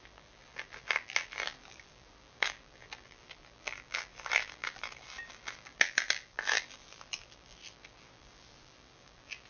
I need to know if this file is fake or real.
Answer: fake